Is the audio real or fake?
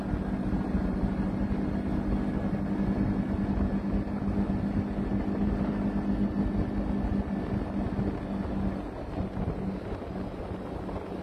real